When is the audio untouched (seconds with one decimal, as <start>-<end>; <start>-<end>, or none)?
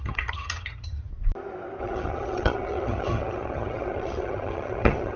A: 1.1-1.8